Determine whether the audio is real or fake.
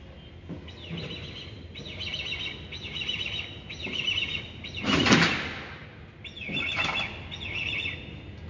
real